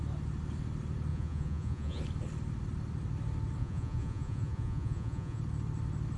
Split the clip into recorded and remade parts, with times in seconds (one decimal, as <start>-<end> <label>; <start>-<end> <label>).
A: 0.0-1.1 recorded; 1.1-2.0 remade; 2.0-3.6 recorded; 3.6-5.4 remade; 5.4-6.2 recorded